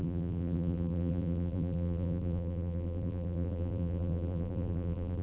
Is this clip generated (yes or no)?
yes